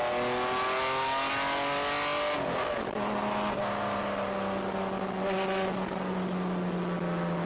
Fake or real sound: real